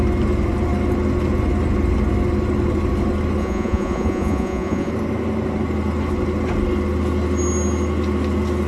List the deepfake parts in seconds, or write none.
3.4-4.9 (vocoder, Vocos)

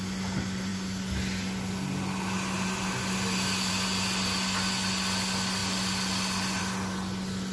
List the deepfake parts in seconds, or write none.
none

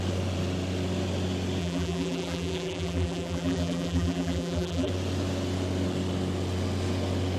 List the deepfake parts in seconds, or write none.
1.6-4.9 (vocoder, BigVGAN v2)

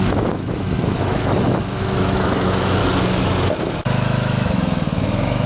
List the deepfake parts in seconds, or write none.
0.0-2.8 (autoencoder, DAC-VAE); 3.6-5.5